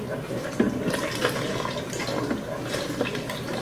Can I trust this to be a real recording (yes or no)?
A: yes